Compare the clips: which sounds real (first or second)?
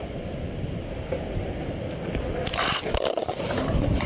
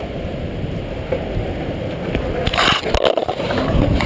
second